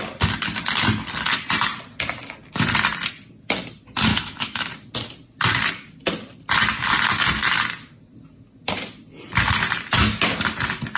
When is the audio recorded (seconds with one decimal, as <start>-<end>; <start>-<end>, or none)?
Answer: 0.0-4.1; 4.7-11.0